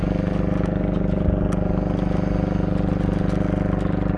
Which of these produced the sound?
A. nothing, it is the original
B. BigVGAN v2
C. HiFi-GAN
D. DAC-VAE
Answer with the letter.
A